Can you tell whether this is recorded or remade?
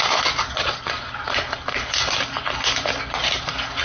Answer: recorded